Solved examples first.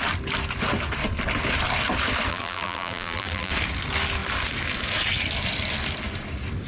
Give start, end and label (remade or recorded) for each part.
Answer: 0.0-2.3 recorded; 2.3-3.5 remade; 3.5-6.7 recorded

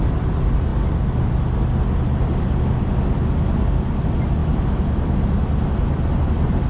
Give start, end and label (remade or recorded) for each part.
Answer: 0.0-6.7 recorded

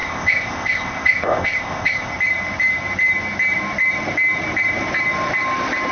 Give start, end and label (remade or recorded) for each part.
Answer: 0.0-2.1 remade; 2.1-5.9 recorded

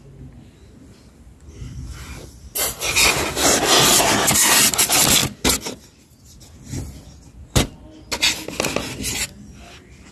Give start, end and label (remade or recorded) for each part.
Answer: 0.0-10.1 recorded

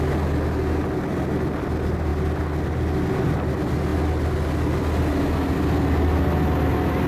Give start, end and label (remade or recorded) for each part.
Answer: 0.0-7.1 recorded